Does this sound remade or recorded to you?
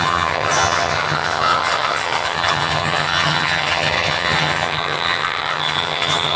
remade